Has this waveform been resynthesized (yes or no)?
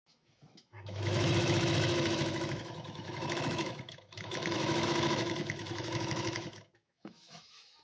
yes